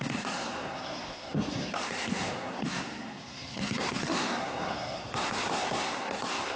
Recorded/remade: remade